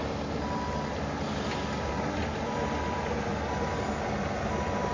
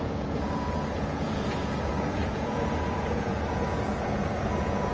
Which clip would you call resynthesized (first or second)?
second